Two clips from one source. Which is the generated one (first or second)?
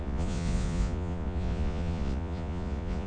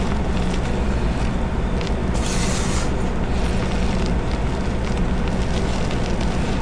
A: first